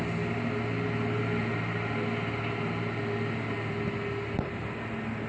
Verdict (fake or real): real